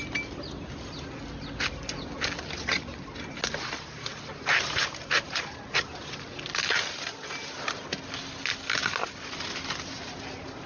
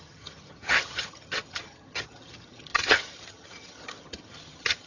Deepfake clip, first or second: second